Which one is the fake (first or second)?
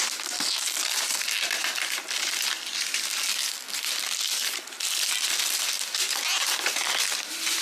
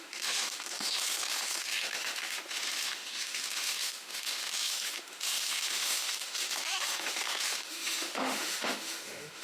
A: second